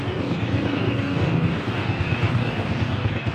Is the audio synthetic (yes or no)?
yes